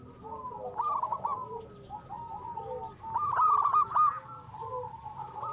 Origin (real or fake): real